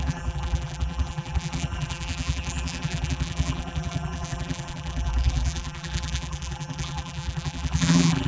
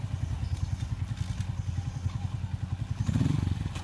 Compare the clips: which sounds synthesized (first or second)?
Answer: first